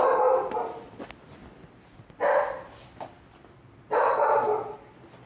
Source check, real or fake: real